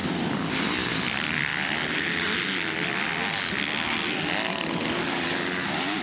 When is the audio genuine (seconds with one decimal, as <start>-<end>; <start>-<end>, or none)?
1.5-5.0